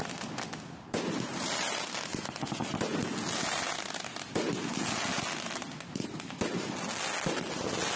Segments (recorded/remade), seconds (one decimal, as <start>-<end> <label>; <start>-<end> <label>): 0.0-8.0 recorded